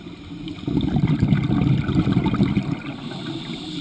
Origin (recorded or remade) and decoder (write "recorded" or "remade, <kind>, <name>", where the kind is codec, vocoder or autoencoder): recorded